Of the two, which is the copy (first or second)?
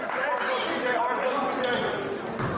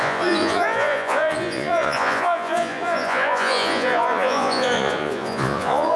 second